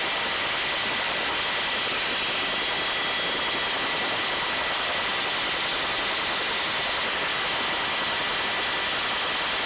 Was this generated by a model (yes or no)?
no